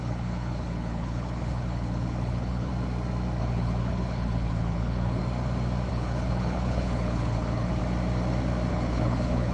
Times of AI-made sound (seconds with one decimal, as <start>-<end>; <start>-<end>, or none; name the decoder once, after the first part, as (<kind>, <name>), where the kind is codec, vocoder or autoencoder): 0.0-2.7 (codec, HILCodec); 3.4-5.2; 5.9-7.8; 8.7-9.5